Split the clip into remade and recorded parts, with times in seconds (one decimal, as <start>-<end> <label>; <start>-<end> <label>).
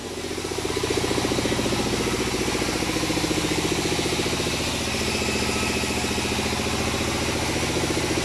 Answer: 0.0-8.2 recorded